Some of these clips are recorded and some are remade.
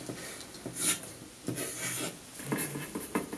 recorded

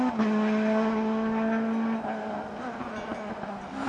recorded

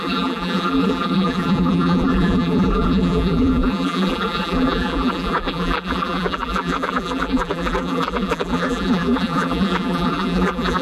remade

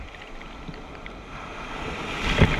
recorded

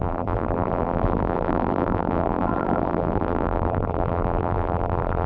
remade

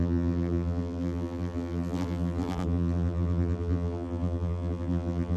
remade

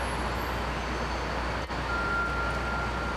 recorded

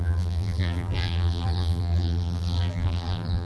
remade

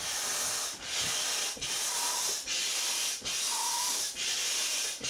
remade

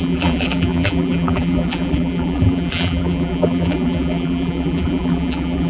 remade